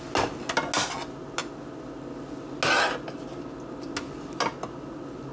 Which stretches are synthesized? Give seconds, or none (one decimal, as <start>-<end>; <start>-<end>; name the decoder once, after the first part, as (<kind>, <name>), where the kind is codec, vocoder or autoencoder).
none